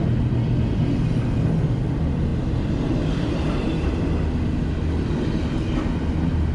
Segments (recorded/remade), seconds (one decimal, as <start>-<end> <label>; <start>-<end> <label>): 0.0-6.5 recorded